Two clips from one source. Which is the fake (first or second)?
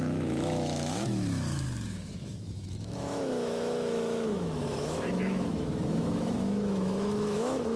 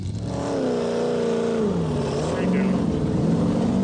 first